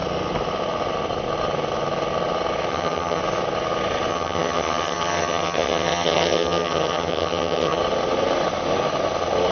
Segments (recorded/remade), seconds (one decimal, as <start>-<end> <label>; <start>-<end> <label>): 0.0-2.7 recorded; 2.7-3.2 remade; 3.2-4.1 recorded; 4.1-7.8 remade; 7.8-9.5 recorded